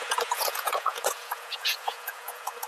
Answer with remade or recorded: remade